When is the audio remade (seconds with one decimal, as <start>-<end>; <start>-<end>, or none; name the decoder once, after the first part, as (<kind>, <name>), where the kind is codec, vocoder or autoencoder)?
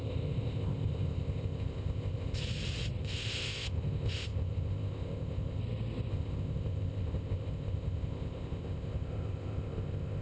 0.0-2.4 (codec, ZipCodec); 3.0-5.6; 6.1-10.2